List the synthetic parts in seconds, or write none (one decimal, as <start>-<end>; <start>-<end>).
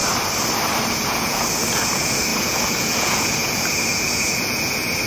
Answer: 0.9-5.1